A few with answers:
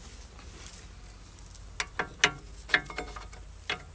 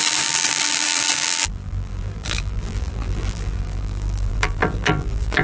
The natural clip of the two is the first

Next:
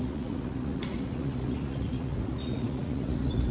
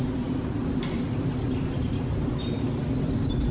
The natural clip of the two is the second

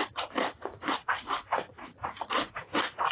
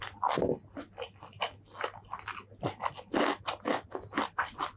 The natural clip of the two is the second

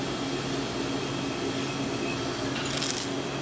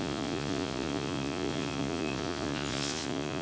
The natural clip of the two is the first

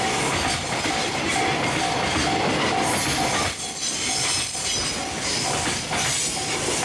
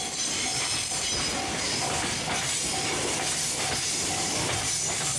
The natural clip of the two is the first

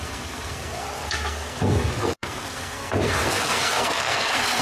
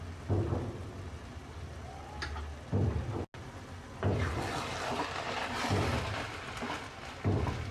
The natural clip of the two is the second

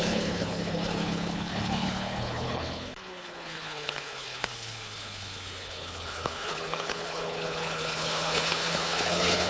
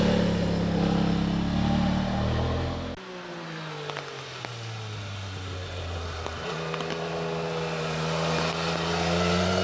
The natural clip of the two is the second